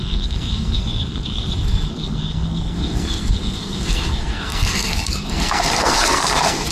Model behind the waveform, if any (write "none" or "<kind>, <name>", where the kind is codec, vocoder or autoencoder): codec, SNAC